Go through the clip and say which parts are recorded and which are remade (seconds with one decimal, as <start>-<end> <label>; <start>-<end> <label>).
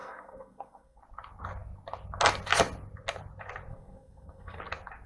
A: 0.0-1.0 remade; 1.0-3.7 recorded; 3.7-4.6 remade; 4.6-5.1 recorded